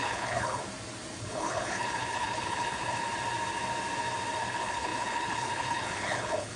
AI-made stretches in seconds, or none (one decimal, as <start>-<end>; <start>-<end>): 0.0-0.6; 1.2-3.0; 4.4-6.6